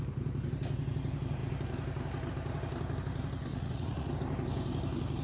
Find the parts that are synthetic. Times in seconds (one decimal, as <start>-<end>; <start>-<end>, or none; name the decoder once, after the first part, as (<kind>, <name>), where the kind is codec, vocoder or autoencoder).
3.5-4.1 (vocoder, Vocos)

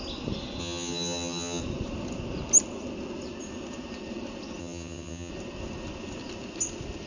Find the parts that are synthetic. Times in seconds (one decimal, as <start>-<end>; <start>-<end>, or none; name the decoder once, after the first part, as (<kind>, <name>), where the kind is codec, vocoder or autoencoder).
0.6-1.6 (vocoder, HiFi-GAN); 4.6-5.3

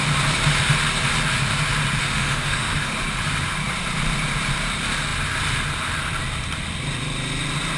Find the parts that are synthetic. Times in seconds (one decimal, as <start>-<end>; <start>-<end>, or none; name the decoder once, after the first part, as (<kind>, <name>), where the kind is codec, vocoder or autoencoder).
2.0-2.9 (autoencoder, DAC-VAE)

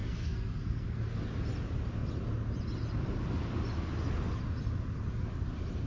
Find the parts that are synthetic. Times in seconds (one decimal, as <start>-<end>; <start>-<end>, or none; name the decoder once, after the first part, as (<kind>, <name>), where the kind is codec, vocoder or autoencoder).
0.0-1.2 (codec, SNAC)

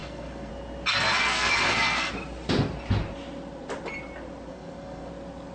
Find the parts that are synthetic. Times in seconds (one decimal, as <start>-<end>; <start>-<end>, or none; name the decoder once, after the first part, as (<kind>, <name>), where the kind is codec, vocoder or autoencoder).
0.0-0.5 (codec, SNAC); 0.9-2.1; 4.5-5.1

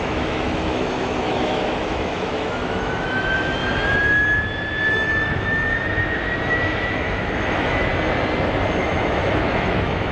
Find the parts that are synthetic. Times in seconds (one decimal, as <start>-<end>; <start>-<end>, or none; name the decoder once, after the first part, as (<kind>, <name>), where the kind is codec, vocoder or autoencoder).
0.0-3.6 (autoencoder, DAC-VAE); 4.9-5.7; 6.5-7.9; 8.8-10.1

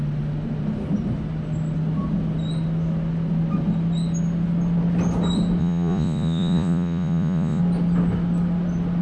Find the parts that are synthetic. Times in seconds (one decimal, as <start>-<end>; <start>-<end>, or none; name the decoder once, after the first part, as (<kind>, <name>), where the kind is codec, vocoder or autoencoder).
5.6-7.6 (vocoder, Vocos)

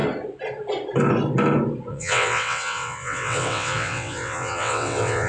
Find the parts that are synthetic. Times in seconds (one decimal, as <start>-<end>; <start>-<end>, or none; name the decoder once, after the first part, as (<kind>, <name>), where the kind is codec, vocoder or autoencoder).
1.9-5.3 (vocoder, WaveNeXt)